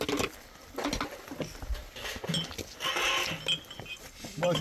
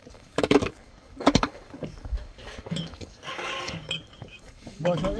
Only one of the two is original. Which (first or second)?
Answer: first